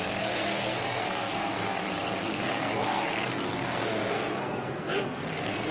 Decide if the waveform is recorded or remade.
remade